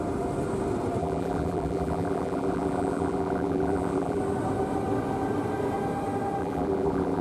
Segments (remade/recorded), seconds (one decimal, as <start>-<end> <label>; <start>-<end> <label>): 0.0-1.0 recorded; 1.0-4.2 remade; 4.2-6.4 recorded; 6.4-7.2 remade